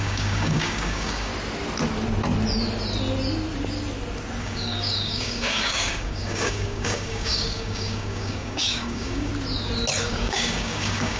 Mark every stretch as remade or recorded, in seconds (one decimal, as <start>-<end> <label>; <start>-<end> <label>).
0.0-1.3 remade; 1.3-4.4 recorded; 4.4-9.3 remade; 9.3-10.0 recorded; 10.0-11.2 remade